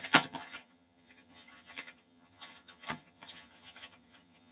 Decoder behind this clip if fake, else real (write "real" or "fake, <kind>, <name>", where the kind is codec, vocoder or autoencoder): fake, vocoder, HiFi-GAN